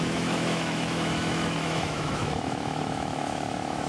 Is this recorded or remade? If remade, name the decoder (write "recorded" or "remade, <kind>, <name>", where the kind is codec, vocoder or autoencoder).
remade, autoencoder, DAC-VAE